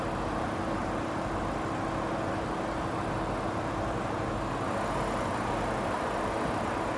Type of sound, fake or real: real